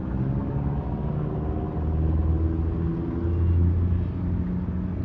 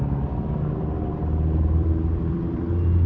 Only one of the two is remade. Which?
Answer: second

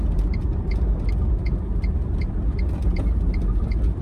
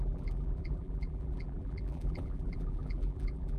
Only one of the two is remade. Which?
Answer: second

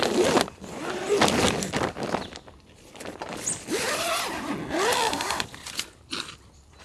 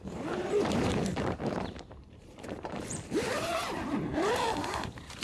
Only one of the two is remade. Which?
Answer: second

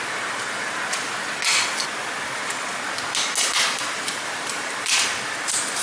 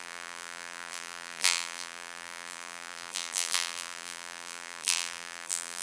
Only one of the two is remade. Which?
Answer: second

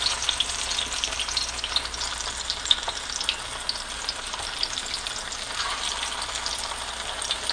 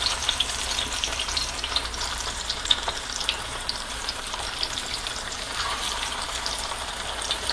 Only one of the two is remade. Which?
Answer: second